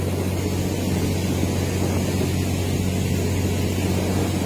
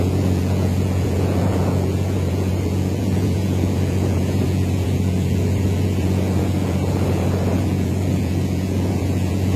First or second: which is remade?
second